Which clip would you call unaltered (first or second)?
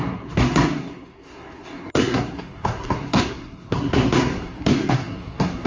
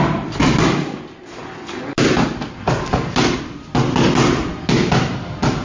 second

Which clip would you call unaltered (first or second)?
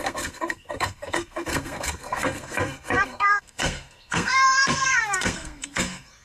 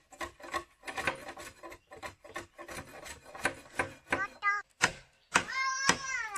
second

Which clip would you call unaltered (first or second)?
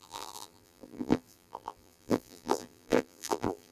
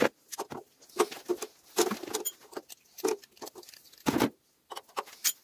second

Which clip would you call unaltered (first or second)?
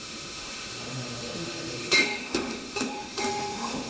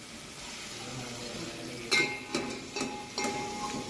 second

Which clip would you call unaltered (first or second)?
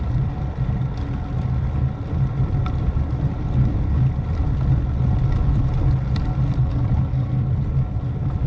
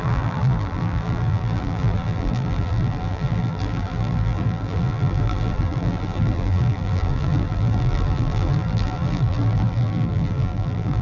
first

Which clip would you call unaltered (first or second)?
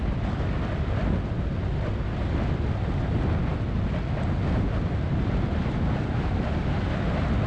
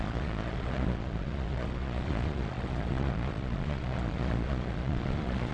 first